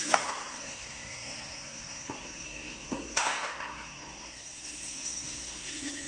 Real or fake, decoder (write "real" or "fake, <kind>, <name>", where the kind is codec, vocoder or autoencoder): fake, codec, SNAC